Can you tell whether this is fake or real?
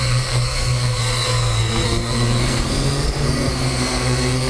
fake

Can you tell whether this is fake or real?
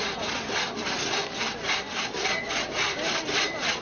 fake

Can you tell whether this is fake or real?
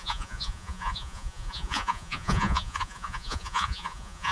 fake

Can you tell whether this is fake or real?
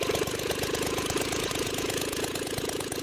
fake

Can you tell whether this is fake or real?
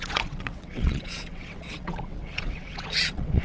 fake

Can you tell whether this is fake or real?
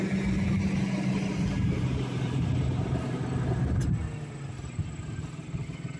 real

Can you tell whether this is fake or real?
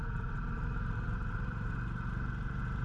fake